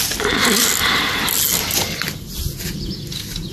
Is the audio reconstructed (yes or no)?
no